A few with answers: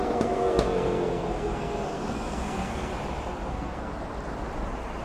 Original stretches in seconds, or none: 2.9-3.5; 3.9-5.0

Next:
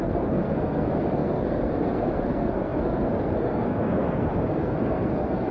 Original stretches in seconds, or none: none

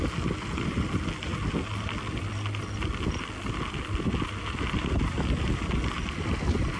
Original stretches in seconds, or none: 0.0-6.8

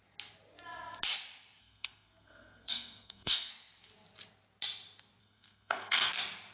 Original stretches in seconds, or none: 0.0-1.6; 3.5-5.2; 6.1-6.5

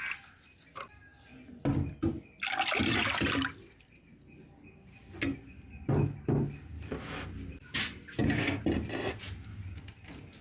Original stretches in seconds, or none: 0.0-10.4